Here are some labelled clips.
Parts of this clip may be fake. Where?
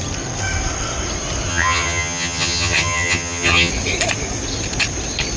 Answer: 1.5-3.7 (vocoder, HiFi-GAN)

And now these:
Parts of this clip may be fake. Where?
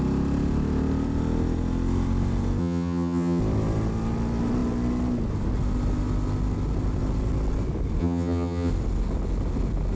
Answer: 2.6-3.4 (vocoder, HiFi-GAN); 8.0-8.7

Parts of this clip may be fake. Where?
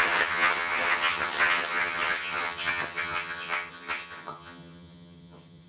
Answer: 0.0-5.7 (vocoder, HiFi-GAN)